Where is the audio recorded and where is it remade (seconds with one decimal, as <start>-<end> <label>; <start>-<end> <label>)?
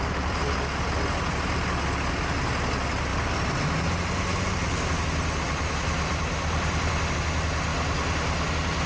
0.0-8.9 recorded